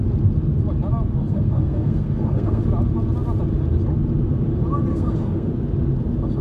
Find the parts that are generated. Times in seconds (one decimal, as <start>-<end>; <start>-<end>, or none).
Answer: 1.2-2.6; 4.9-5.5